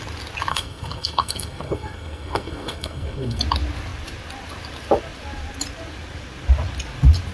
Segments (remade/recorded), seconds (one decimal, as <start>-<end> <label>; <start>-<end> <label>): 0.0-0.5 recorded; 0.5-3.4 remade; 3.4-7.3 recorded